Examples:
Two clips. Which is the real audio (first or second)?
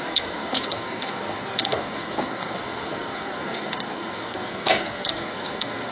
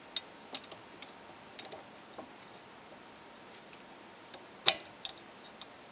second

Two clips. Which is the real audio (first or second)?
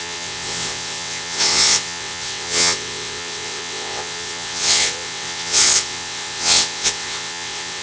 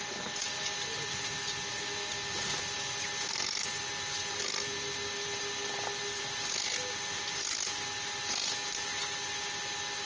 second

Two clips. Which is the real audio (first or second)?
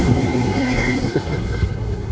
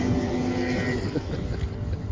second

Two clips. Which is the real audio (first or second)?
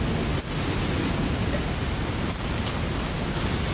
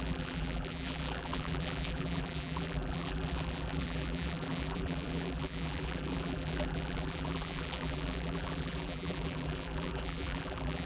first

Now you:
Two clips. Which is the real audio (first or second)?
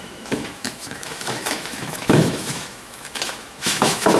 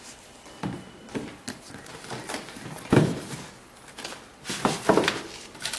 second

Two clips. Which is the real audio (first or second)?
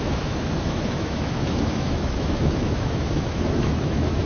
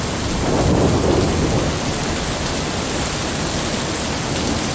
second